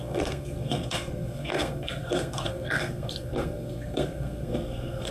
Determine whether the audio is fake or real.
fake